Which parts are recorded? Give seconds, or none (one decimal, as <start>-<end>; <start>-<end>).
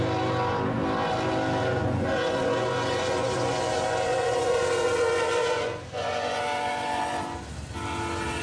0.0-1.6; 6.4-8.4